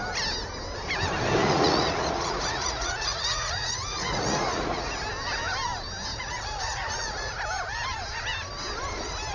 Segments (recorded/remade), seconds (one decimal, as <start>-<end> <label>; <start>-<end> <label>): 0.0-1.4 recorded; 1.4-4.9 remade; 4.9-6.1 recorded; 6.1-7.3 remade; 7.3-9.3 recorded